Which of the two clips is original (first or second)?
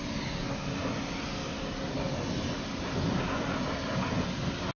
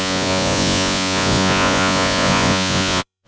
first